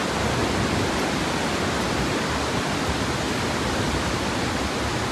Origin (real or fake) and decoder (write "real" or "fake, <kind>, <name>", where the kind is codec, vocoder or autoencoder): real